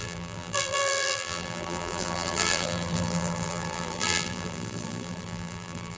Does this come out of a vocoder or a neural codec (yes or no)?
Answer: yes